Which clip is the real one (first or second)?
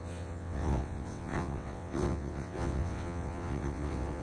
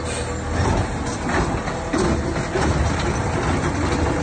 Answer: second